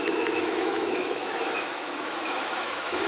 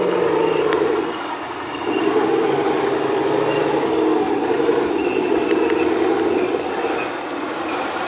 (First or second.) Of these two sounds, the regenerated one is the first